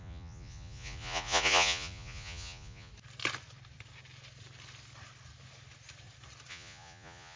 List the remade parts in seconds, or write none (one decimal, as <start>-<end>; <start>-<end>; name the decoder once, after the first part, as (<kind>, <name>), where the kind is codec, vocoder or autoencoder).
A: 0.0-2.9 (vocoder, Vocos); 6.5-7.4